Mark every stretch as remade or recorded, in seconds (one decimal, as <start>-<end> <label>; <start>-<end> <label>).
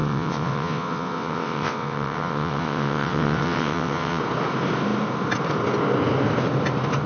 0.0-4.2 remade; 4.2-7.1 recorded